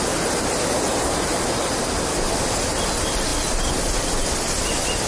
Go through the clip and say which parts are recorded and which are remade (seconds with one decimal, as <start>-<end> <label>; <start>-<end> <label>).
0.0-0.9 recorded; 0.9-1.9 remade; 1.9-5.1 recorded